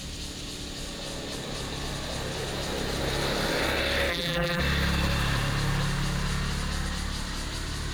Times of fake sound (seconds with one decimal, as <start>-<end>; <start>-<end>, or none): 4.1-4.6